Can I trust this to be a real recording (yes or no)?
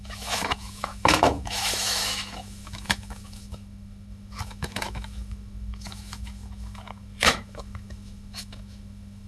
no